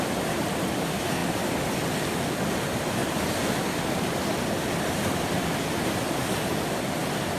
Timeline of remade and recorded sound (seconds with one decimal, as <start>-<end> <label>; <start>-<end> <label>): 0.0-7.4 recorded